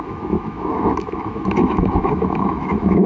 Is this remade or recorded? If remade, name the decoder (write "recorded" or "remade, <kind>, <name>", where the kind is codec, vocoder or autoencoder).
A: remade, autoencoder, DAC-VAE